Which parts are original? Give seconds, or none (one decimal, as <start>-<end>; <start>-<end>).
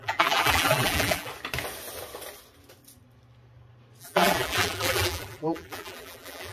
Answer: 1.3-4.0